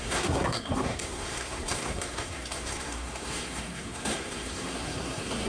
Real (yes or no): no